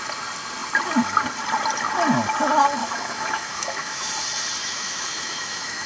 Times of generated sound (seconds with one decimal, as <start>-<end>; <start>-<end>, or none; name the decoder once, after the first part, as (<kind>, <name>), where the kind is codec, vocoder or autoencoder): 2.8-4.1 (autoencoder, DAC-VAE); 4.6-5.9